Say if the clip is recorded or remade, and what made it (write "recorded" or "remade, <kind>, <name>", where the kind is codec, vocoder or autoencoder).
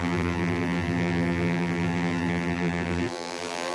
remade, vocoder, BigVGAN v2